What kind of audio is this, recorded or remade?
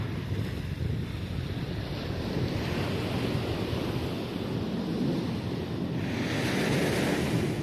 recorded